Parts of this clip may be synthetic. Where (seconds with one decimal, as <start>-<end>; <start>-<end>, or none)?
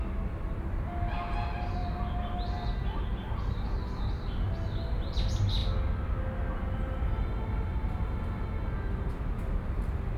none